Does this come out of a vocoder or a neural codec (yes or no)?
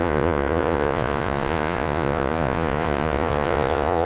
yes